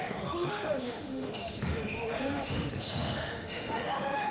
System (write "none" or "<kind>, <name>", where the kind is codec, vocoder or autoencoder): autoencoder, DAC-VAE